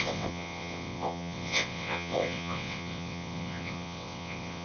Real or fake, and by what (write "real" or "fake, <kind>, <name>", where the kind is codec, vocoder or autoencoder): fake, vocoder, WaveNeXt